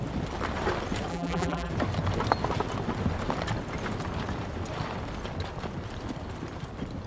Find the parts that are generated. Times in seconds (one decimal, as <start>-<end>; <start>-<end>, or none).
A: 1.1-1.7